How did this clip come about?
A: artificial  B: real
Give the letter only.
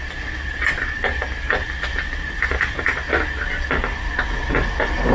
B